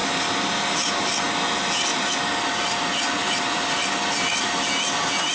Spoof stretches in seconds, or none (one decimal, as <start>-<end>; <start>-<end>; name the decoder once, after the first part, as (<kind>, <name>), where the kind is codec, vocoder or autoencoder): 1.9-2.6 (vocoder, BigVGAN v2); 3.2-4.3